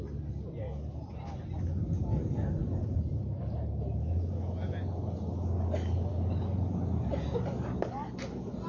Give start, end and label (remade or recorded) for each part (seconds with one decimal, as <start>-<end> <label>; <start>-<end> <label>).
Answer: 0.0-8.7 recorded